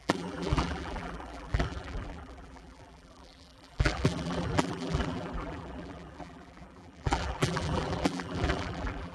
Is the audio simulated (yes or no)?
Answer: yes